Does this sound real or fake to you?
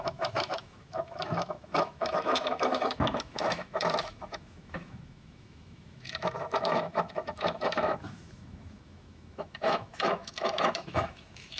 fake